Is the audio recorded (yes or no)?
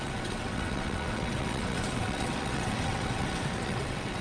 no